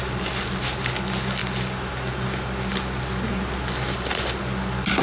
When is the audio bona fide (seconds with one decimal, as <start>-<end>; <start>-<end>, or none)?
0.0-5.0